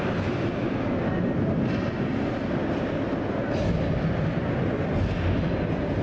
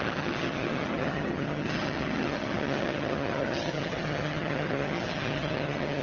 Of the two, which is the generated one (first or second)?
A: second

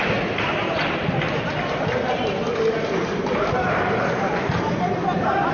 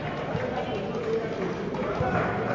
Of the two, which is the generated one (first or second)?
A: first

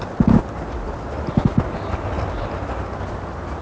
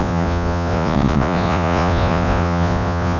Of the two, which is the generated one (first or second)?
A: second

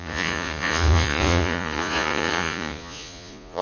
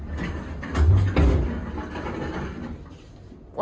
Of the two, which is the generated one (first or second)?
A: first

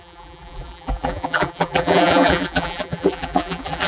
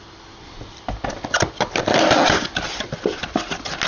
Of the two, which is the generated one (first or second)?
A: first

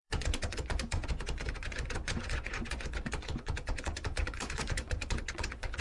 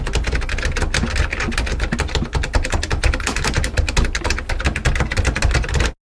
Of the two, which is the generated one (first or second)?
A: first